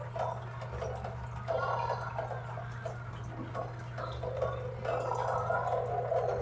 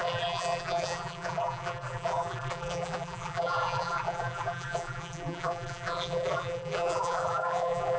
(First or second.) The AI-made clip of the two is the second